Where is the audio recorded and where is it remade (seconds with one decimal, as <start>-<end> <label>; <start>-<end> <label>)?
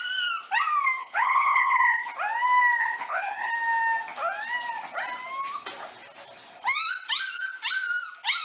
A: 0.0-1.0 recorded; 1.0-2.1 remade; 2.1-2.8 recorded; 2.8-3.5 remade; 3.5-8.4 recorded